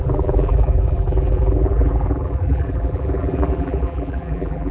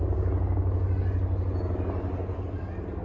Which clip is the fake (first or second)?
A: first